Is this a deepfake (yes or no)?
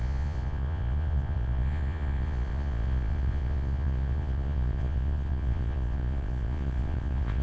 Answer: yes